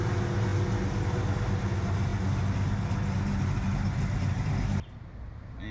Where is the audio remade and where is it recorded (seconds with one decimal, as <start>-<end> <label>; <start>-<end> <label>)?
0.0-5.7 recorded